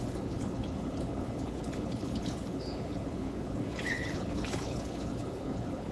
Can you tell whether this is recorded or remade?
remade